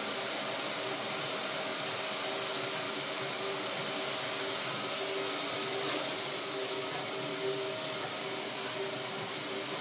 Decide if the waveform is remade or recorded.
recorded